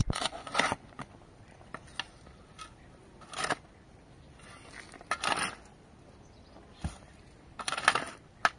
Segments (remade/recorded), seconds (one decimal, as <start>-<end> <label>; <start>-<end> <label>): 0.0-1.1 remade; 1.1-8.6 recorded